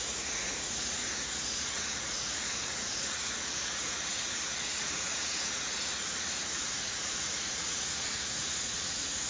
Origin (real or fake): fake